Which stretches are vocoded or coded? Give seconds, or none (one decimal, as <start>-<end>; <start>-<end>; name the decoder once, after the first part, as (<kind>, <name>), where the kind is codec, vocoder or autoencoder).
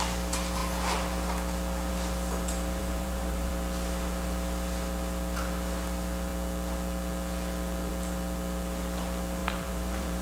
2.8-3.5 (vocoder, BigVGAN v2); 9.4-10.2